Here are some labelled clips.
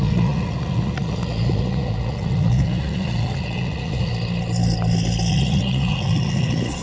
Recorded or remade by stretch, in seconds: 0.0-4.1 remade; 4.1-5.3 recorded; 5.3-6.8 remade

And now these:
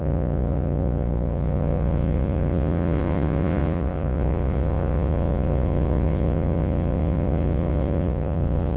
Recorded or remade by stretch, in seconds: 0.0-8.8 remade

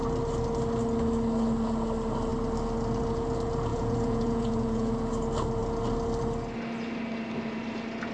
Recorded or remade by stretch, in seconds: 0.0-3.7 recorded; 3.7-4.9 remade; 4.9-8.1 recorded